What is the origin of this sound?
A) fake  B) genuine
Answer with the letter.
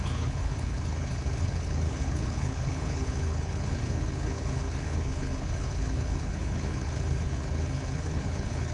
A